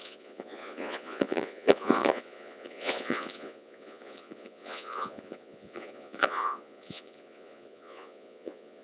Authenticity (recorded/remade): remade